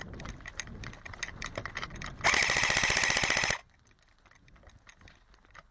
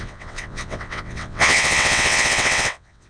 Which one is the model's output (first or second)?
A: second